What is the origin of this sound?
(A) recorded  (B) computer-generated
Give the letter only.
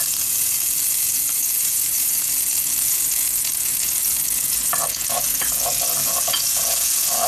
B